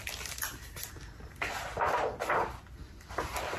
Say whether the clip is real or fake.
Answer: real